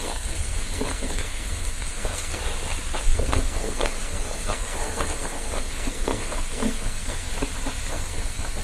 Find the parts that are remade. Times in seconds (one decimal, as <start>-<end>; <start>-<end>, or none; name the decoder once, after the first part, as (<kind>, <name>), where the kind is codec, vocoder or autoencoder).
0.0-2.4 (codec, SNAC); 3.0-7.3; 7.9-8.6